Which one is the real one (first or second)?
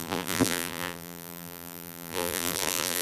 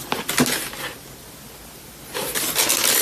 second